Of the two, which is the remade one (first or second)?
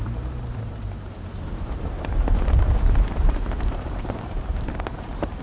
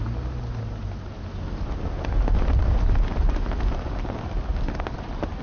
first